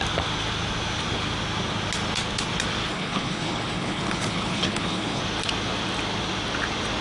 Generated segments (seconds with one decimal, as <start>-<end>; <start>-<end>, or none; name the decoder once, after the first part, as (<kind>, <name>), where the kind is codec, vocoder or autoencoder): 2.9-5.2 (codec, HILCodec)